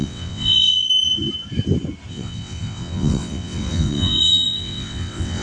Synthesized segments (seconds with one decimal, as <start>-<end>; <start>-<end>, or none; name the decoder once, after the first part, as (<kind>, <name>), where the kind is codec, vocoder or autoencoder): 0.0-0.9 (vocoder, WaveNeXt); 2.1-5.4